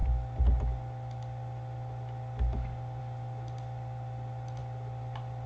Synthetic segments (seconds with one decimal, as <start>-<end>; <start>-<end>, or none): none